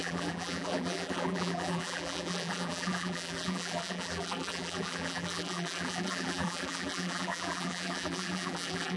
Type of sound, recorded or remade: remade